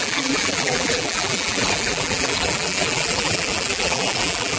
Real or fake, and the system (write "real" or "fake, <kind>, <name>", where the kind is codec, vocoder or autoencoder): fake, vocoder, BigVGAN v2